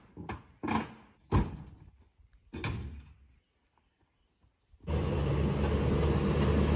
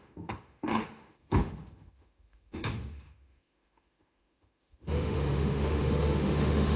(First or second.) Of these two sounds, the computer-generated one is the second